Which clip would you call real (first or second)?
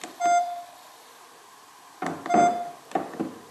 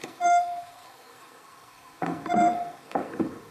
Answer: first